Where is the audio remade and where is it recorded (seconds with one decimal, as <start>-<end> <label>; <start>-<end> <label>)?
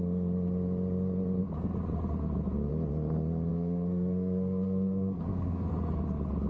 0.0-3.5 recorded; 3.5-5.7 remade; 5.7-6.5 recorded